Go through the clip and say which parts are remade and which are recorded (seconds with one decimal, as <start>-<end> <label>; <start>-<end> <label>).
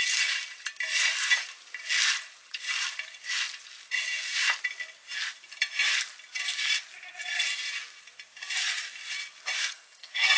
0.0-9.6 recorded; 9.6-10.4 remade